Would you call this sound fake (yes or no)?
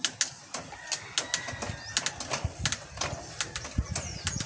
no